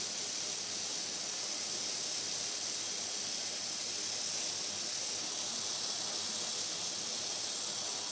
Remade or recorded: recorded